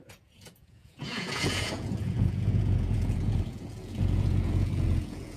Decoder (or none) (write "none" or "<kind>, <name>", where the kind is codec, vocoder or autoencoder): vocoder, Vocos